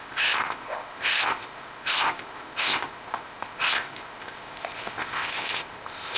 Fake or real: fake